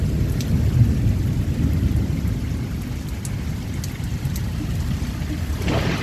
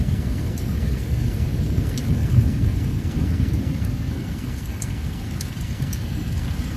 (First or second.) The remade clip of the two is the second